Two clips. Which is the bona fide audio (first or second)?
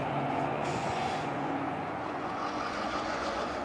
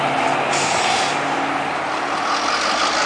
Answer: second